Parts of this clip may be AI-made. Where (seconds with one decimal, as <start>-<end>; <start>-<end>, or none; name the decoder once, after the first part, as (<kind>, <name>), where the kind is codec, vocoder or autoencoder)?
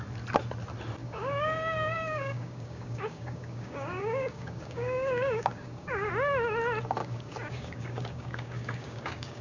1.0-6.1 (codec, DAC); 7.0-9.4